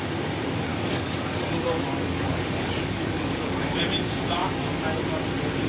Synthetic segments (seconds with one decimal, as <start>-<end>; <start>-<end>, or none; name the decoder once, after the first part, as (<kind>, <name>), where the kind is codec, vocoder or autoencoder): 0.7-3.8 (codec, DAC); 4.4-5.0